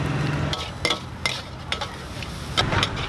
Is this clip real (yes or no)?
yes